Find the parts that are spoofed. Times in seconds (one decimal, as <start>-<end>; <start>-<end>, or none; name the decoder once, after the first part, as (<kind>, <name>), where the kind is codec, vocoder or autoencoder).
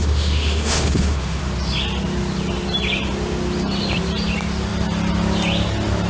0.0-1.4 (autoencoder, DAC-VAE)